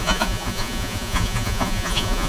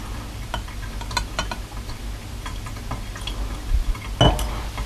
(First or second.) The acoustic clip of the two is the second